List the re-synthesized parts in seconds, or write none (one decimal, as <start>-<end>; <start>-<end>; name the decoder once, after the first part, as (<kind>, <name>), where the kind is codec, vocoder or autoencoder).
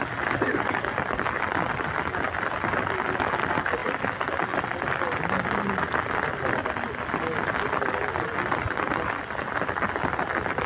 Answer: none